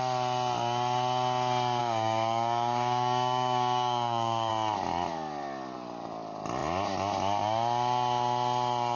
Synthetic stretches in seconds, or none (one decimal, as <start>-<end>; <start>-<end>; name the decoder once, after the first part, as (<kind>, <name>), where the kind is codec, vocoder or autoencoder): 1.8-4.5 (codec, DAC)